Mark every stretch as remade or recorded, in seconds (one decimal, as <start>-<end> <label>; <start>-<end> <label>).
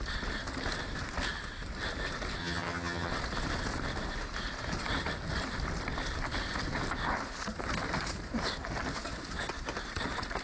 0.0-2.4 recorded; 2.4-3.1 remade; 3.1-10.4 recorded